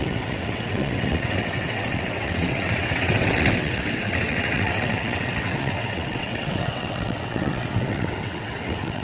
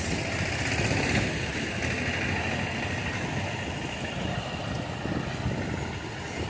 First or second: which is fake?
first